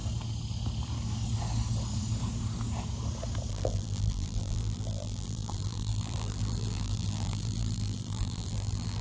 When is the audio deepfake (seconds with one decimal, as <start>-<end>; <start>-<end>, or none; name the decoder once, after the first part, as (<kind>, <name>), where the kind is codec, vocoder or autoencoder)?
3.5-9.0 (vocoder, BigVGAN v2)